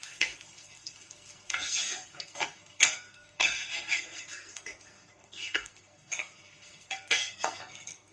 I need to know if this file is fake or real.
fake